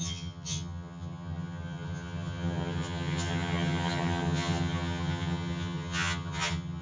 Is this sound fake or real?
fake